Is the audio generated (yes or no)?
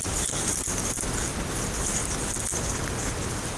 no